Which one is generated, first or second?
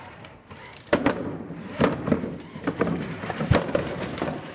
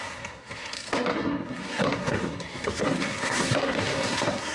second